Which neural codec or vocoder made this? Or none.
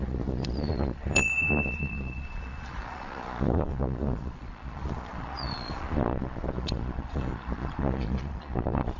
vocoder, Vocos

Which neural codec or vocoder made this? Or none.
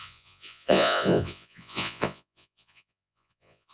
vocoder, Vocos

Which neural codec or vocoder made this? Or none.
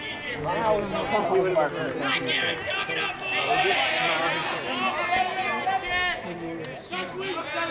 none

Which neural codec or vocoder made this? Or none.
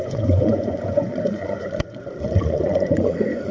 vocoder, Vocos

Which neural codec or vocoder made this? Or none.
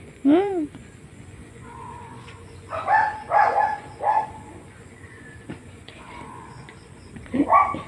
vocoder, Vocos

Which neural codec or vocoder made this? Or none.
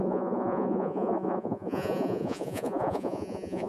vocoder, Vocos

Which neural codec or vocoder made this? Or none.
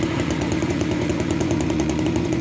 vocoder, Vocos